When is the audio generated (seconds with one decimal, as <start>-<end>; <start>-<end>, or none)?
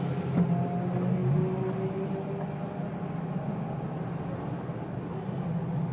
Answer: none